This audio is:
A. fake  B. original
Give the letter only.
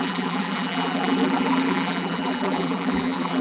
A